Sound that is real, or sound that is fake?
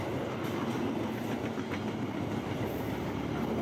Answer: real